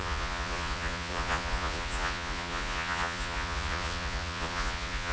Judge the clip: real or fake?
fake